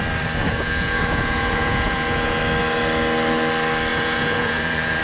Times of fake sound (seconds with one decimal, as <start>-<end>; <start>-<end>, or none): 0.4-2.4; 3.9-5.0